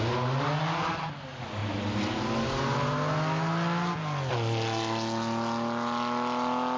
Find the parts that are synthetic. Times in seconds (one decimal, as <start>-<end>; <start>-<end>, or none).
none